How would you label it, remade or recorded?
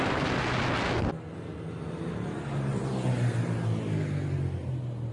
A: recorded